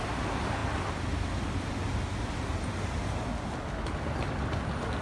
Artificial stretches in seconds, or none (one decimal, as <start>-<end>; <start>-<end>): none

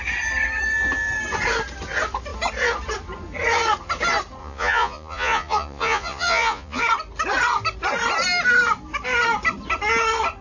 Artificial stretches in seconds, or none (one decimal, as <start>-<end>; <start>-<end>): 4.4-6.8

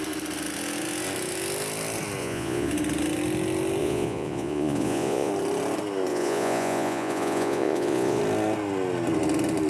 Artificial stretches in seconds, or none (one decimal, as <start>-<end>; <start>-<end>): 2.2-2.7; 3.8-5.3; 6.1-8.2

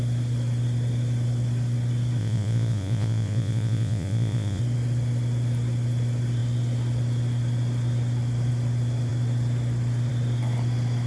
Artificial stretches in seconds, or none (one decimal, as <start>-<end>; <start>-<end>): 2.2-4.6

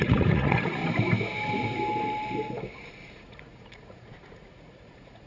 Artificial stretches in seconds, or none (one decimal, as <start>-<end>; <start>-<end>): 0.0-0.8; 2.9-5.3

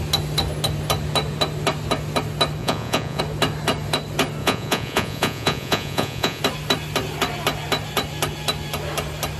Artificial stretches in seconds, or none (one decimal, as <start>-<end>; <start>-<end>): 2.6-3.2; 4.4-6.4

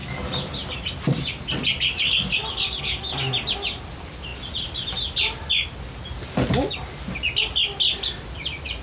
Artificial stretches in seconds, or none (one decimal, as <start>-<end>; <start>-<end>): none

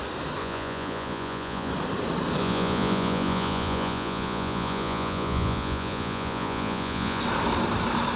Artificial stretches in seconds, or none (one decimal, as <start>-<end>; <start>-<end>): 0.4-1.7; 2.4-7.2